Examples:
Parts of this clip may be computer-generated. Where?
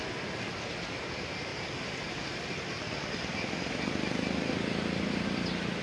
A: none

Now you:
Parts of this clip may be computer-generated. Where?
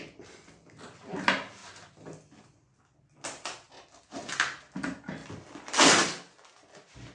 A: none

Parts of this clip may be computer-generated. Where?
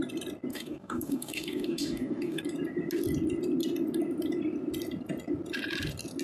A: 0.5-2.4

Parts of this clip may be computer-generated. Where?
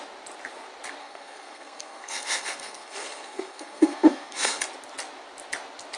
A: 1.0-4.6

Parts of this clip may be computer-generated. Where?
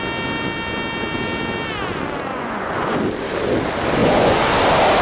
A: 2.3-2.9; 4.0-4.5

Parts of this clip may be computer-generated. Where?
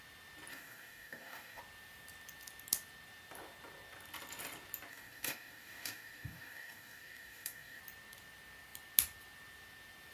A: 0.5-1.6; 4.9-7.8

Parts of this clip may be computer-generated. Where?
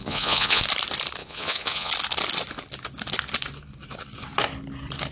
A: 0.0-0.6; 1.2-1.9